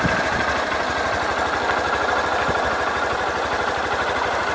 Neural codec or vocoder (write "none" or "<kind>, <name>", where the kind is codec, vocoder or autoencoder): none